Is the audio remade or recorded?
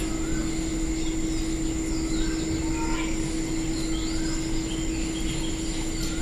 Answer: recorded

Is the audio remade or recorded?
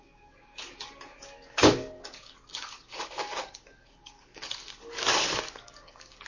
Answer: remade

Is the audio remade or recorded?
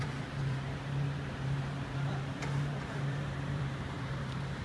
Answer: remade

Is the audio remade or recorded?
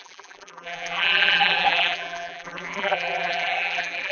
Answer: remade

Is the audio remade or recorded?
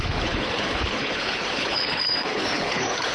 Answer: remade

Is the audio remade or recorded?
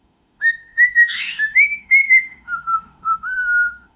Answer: remade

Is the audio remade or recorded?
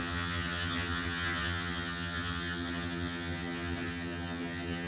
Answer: remade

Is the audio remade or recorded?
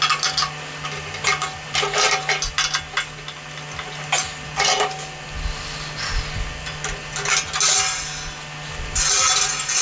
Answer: recorded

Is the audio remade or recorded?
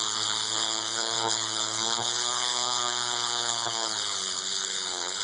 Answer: remade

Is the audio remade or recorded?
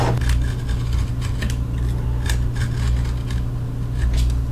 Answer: recorded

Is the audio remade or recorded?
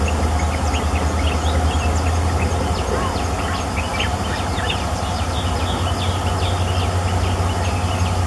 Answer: recorded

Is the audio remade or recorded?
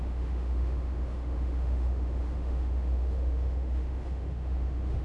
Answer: remade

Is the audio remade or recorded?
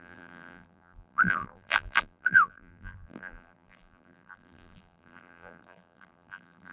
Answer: remade